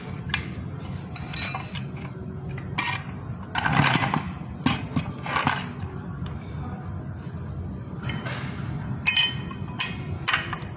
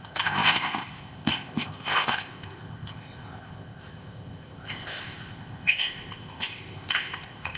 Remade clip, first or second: second